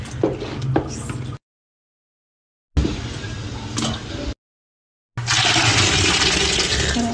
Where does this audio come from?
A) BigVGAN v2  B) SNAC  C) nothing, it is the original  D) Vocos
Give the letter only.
C